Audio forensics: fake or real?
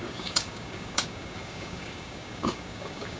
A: fake